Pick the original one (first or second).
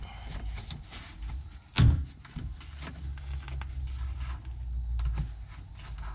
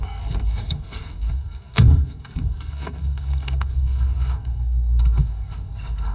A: first